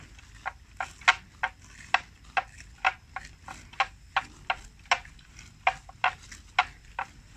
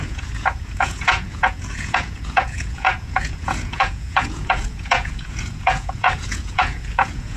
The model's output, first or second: second